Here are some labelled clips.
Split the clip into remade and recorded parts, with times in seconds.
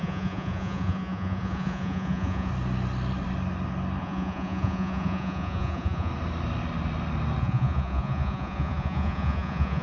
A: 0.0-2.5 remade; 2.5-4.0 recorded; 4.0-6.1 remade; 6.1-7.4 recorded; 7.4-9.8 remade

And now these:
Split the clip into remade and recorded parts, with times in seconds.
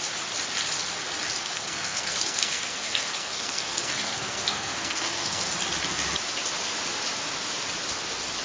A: 0.0-1.4 recorded; 1.4-5.4 remade; 5.4-8.4 recorded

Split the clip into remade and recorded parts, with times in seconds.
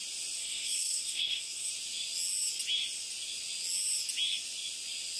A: 0.0-0.4 recorded; 0.4-1.7 remade; 1.7-5.2 recorded